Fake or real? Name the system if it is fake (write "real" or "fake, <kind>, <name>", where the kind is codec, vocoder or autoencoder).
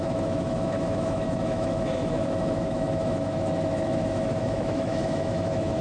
fake, autoencoder, DAC-VAE